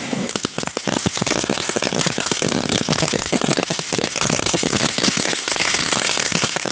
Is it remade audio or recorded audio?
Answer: remade